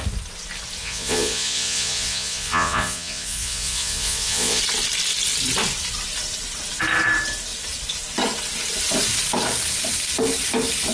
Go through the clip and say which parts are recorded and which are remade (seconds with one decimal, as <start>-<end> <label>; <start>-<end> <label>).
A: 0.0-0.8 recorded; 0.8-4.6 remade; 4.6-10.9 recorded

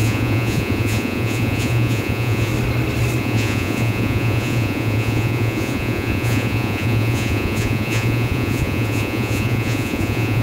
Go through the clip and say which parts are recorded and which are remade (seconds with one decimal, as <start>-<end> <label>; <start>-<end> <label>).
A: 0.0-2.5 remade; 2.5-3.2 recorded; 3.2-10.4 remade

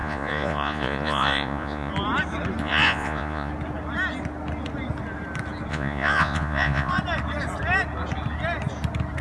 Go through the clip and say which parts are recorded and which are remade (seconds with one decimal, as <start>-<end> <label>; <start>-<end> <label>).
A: 0.0-1.9 remade; 1.9-2.6 recorded; 2.6-3.5 remade; 3.5-5.7 recorded; 5.7-6.9 remade; 6.9-9.2 recorded

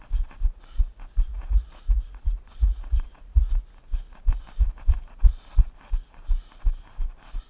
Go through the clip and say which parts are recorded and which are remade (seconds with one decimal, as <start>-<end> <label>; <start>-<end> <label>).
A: 0.0-1.3 recorded; 1.3-3.5 remade; 3.5-7.5 recorded

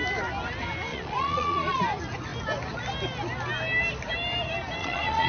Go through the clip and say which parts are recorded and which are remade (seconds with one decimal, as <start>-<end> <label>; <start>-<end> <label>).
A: 0.0-0.9 recorded; 0.9-1.8 remade; 1.8-4.8 recorded; 4.8-5.3 remade